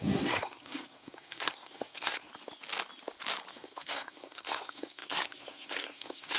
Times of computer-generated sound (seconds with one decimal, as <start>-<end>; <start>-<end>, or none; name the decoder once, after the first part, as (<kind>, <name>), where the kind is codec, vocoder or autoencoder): 0.0-2.3 (codec, SNAC); 3.5-6.4